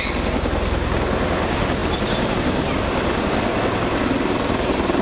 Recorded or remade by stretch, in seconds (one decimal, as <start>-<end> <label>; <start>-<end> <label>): 0.0-5.0 recorded